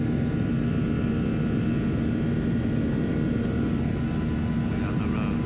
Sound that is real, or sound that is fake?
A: real